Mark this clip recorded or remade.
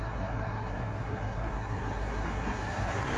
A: remade